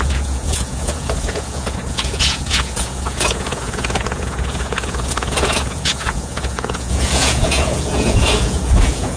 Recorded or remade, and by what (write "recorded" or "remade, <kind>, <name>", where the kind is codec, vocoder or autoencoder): remade, vocoder, Vocos